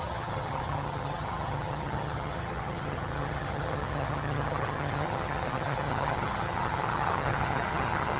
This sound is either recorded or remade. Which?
remade